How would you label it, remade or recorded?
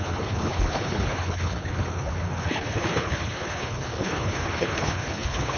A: remade